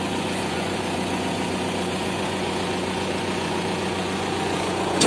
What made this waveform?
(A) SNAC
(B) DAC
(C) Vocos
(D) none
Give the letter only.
C